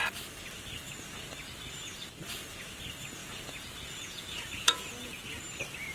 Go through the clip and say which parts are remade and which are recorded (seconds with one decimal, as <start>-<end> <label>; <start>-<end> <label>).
0.0-3.2 recorded; 3.2-5.3 remade; 5.3-5.9 recorded